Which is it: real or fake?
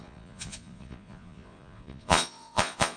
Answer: fake